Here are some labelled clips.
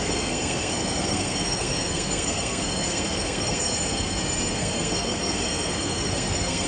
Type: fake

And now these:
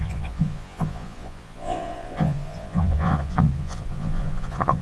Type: fake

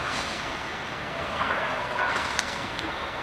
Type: fake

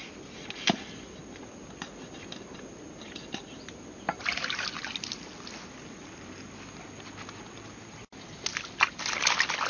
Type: real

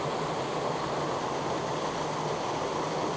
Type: real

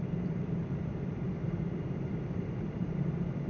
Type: fake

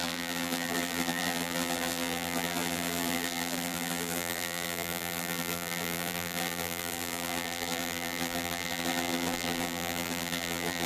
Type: fake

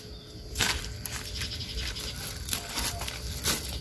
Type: real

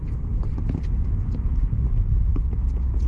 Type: real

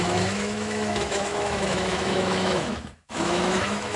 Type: fake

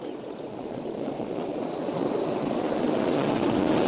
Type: fake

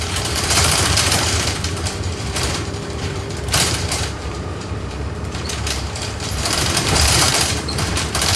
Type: fake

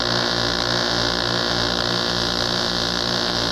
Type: real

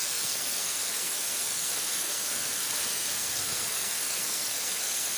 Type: fake